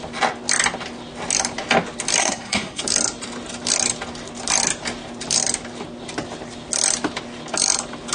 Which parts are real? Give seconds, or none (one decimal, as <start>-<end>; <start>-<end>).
0.0-2.2; 2.8-8.1